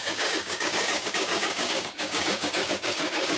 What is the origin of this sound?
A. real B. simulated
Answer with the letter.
B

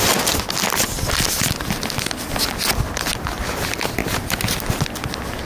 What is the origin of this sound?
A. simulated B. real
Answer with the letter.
B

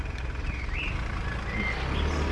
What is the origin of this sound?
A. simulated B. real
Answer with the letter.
B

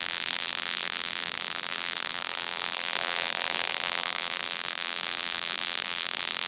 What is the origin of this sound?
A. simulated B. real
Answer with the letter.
A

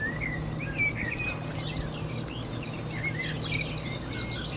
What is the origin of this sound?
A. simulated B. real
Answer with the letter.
B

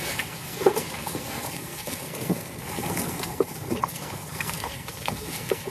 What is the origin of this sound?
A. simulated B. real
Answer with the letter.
A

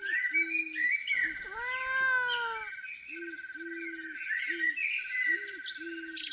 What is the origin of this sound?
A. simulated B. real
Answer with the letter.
B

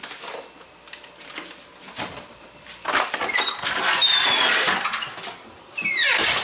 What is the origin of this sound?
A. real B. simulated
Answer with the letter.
A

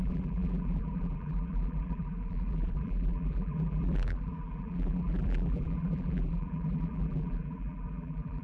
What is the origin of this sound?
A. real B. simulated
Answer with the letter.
B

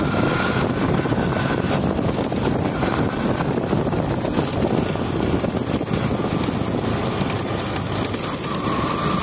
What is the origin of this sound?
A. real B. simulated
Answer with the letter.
A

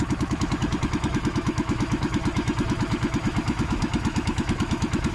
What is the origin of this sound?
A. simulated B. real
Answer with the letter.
A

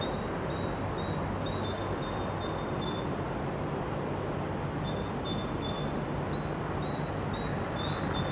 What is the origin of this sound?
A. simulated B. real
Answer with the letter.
B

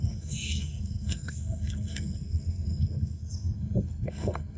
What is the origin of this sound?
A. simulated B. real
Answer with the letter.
A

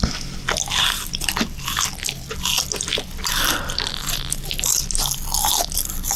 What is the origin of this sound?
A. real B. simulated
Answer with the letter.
A